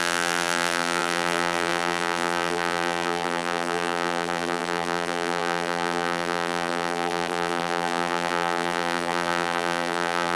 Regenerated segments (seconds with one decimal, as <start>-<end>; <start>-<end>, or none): 0.0-10.4